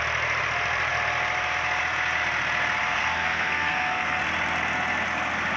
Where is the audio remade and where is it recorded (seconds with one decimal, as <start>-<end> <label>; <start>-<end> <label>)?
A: 0.0-2.8 recorded; 2.8-4.2 remade; 4.2-5.6 recorded